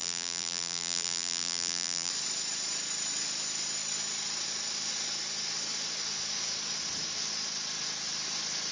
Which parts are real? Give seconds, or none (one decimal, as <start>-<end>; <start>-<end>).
2.1-8.7